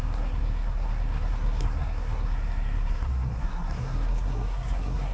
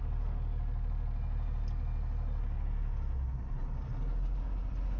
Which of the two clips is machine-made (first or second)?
first